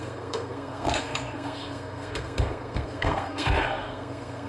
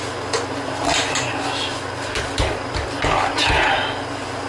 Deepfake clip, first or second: first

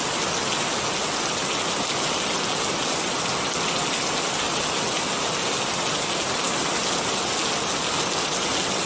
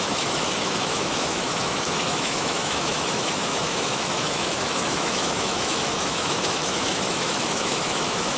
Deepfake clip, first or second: second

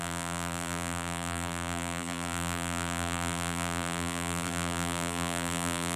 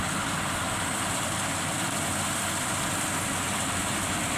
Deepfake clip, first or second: first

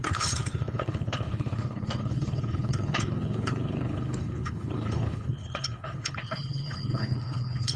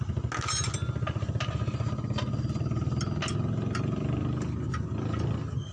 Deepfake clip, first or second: first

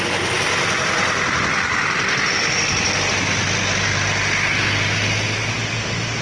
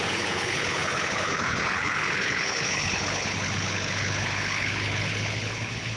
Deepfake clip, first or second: second